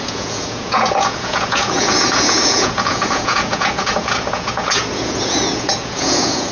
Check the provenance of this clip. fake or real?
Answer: fake